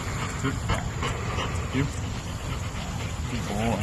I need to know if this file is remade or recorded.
recorded